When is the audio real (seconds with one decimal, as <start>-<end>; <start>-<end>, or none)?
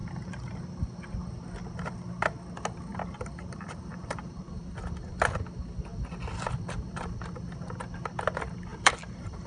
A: 0.6-2.9; 5.1-5.9; 7.2-8.7